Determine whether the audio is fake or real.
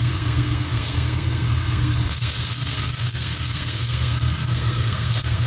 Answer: fake